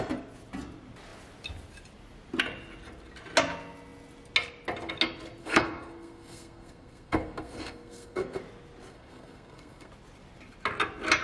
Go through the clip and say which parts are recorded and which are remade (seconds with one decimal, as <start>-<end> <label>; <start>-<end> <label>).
0.0-5.4 recorded; 5.4-8.4 remade; 8.4-8.9 recorded; 8.9-9.9 remade; 9.9-11.2 recorded